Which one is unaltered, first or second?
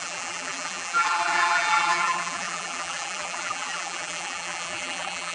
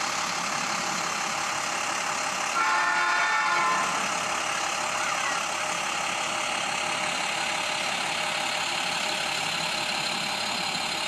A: second